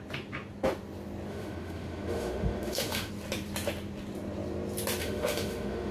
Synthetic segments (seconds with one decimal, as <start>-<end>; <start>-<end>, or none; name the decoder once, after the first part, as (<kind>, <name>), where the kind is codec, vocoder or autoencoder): 1.3-3.1 (autoencoder, DAC-VAE); 5.0-5.9